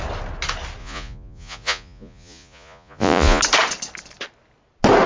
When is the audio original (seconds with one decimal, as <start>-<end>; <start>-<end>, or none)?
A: 0.0-0.8; 3.4-5.1